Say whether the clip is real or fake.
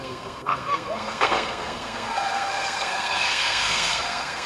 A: fake